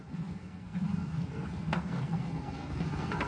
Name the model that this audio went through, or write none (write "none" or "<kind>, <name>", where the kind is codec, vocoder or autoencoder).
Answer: codec, SNAC